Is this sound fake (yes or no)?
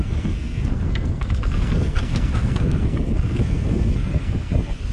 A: yes